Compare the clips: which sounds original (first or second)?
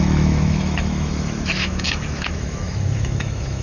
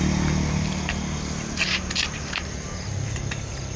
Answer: second